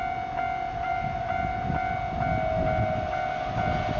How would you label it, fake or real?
real